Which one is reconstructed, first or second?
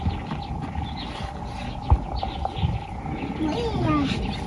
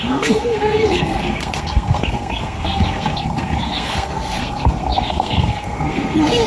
second